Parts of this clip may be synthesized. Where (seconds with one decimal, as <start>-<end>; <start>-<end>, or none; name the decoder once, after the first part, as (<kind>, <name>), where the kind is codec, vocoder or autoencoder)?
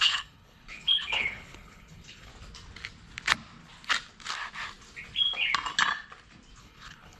0.0-2.3 (codec, HILCodec); 6.6-7.2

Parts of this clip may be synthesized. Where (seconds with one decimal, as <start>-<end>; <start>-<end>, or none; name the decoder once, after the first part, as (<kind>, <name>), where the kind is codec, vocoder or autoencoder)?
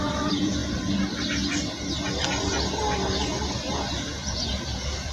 0.0-0.6 (vocoder, Vocos); 3.7-5.1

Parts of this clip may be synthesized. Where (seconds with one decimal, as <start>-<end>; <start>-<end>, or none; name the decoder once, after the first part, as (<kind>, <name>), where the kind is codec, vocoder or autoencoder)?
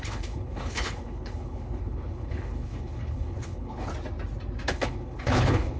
0.0-3.9 (codec, HILCodec); 4.7-5.8